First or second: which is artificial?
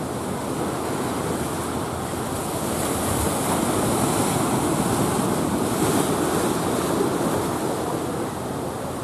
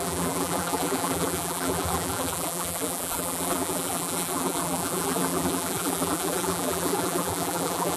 second